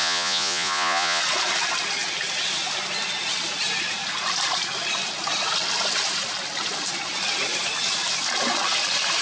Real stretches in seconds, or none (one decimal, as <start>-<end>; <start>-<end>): 1.2-9.2